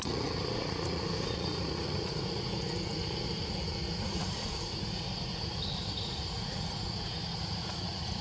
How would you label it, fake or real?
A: fake